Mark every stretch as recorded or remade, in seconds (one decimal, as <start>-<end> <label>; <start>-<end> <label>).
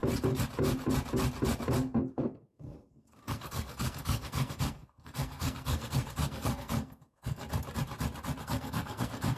0.0-2.1 recorded; 2.1-7.4 remade; 7.4-8.4 recorded; 8.4-9.4 remade